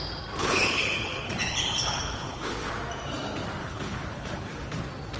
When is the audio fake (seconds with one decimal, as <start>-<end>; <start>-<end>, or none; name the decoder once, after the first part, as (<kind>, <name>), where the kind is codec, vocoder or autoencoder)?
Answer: 0.4-2.7 (codec, HILCodec); 3.6-4.8